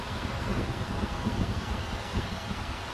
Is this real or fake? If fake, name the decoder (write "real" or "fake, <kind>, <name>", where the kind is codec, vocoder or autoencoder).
fake, codec, SNAC